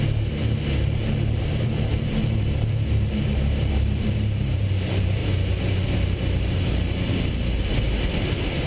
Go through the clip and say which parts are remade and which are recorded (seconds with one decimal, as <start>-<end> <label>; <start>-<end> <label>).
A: 0.0-5.2 remade; 5.2-8.7 recorded